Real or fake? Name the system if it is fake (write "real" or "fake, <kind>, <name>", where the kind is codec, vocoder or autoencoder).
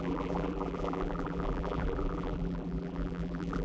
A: fake, vocoder, BigVGAN v2